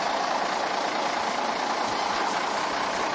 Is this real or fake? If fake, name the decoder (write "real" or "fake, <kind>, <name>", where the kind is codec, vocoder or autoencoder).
real